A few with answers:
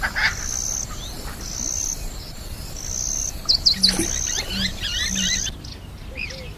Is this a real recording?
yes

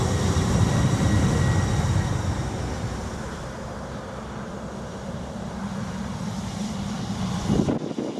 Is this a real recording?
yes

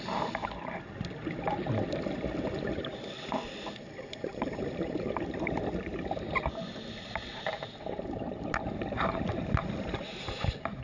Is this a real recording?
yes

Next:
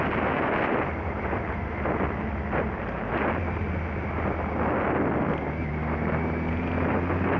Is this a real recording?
yes